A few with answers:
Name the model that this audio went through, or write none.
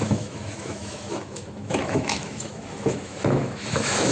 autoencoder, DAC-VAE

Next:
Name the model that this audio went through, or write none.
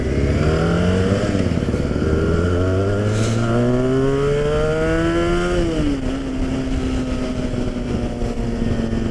none